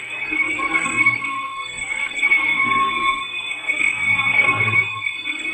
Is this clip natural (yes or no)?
no